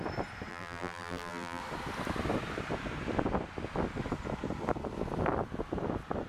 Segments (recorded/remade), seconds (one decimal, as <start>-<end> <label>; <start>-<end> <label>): 0.0-0.5 recorded; 0.5-1.6 remade; 1.6-6.3 recorded